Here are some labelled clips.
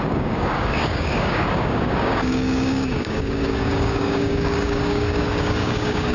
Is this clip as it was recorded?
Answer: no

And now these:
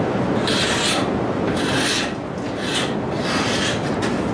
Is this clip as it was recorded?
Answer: yes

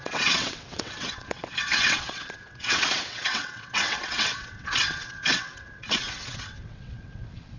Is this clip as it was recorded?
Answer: no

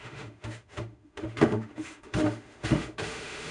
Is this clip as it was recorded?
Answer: no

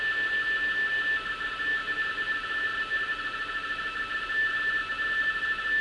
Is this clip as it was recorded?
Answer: yes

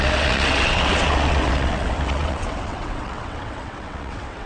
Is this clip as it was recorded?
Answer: no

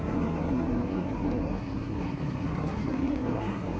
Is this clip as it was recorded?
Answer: no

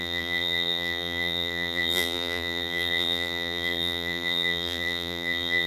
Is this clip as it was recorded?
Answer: no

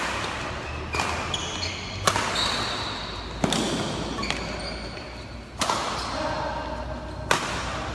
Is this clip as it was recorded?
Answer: yes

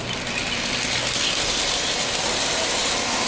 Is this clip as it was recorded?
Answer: yes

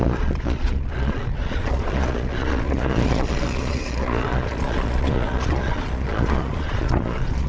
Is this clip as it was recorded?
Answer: no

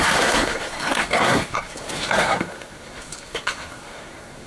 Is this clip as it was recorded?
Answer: no